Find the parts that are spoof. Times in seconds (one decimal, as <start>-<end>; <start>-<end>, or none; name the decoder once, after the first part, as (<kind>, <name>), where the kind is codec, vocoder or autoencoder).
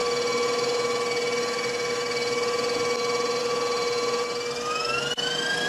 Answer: none